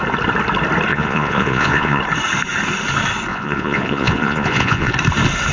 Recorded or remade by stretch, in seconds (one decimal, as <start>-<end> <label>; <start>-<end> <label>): 0.0-0.9 recorded; 0.9-2.0 remade; 2.0-3.3 recorded; 3.3-4.9 remade; 4.9-5.5 recorded